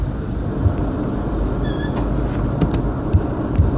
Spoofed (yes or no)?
no